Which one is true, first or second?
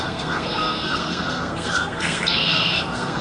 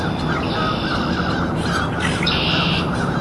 second